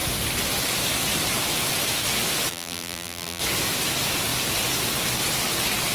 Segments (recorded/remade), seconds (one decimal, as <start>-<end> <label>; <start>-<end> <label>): 0.0-2.5 recorded; 2.5-3.4 remade; 3.4-5.9 recorded